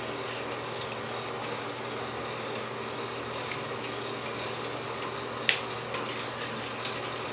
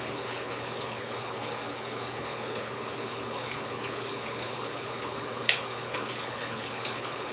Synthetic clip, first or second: second